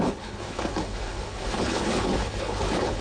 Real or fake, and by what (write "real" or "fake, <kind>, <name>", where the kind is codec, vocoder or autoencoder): fake, codec, HILCodec